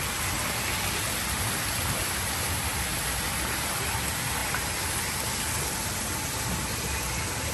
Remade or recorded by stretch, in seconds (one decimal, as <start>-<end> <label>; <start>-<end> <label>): 0.0-7.5 recorded